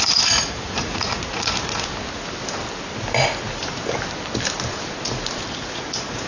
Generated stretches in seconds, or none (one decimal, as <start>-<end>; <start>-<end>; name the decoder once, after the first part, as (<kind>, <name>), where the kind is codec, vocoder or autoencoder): 0.0-1.9 (vocoder, Vocos); 5.7-6.3